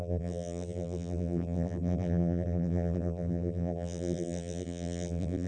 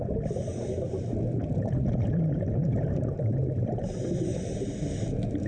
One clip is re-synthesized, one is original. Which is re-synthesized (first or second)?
first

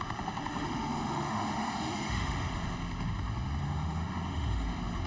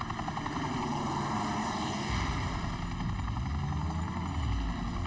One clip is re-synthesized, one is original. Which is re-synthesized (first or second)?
first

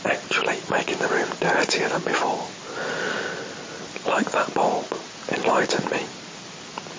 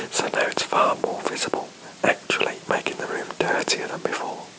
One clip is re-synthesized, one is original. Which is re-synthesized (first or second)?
second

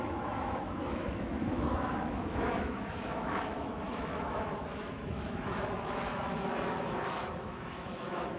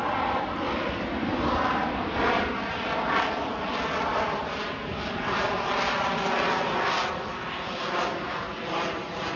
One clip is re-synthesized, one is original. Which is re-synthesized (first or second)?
first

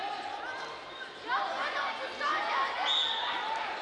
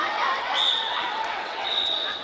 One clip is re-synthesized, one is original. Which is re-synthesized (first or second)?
second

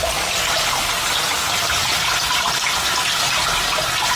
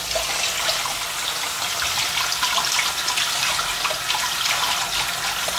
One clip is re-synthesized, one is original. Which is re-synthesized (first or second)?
first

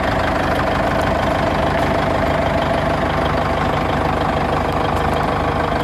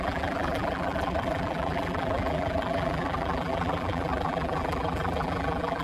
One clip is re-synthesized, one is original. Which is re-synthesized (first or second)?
second